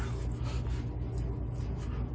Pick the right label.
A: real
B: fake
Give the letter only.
A